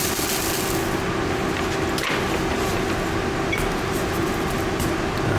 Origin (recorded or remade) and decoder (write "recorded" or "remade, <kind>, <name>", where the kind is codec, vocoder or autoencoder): recorded